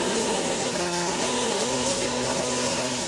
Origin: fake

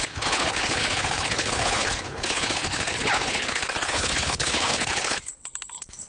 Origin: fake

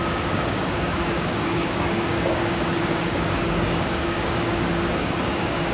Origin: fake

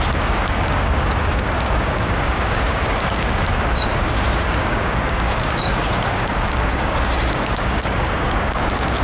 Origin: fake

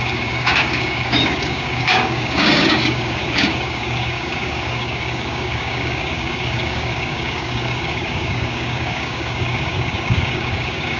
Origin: fake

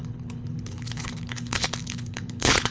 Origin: fake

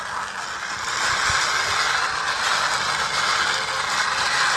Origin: real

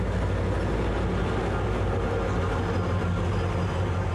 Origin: real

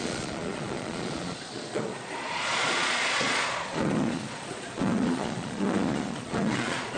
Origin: fake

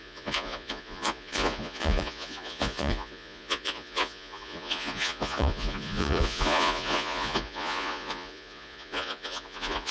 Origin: fake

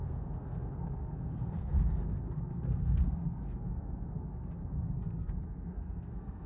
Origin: fake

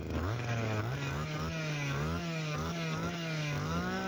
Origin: fake